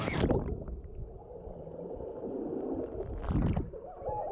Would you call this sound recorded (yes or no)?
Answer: yes